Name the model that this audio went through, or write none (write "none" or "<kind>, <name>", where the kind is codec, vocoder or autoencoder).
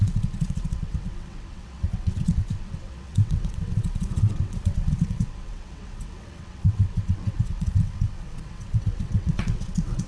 vocoder, WaveNeXt